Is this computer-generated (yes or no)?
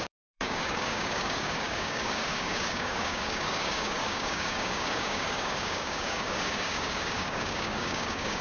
yes